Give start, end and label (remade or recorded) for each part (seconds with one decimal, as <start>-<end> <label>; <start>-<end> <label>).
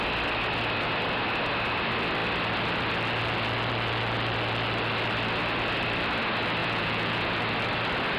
0.0-6.6 recorded; 6.6-7.4 remade; 7.4-8.2 recorded